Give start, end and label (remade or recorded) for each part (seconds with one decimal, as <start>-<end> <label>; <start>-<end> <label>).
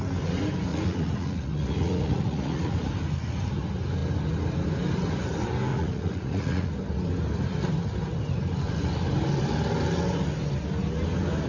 0.0-0.7 recorded; 0.7-2.9 remade; 2.9-5.7 recorded; 5.7-6.7 remade; 6.7-11.5 recorded